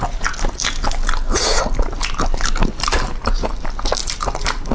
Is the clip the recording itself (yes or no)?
yes